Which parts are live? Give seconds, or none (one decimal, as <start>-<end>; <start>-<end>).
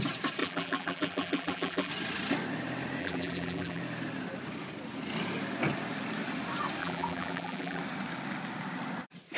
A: 0.0-0.4; 1.9-3.0; 3.8-6.8; 7.8-9.4